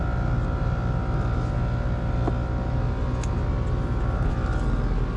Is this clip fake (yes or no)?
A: no